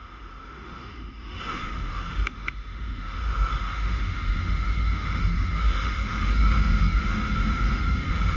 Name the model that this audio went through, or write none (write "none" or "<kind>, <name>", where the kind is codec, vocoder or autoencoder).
autoencoder, DAC-VAE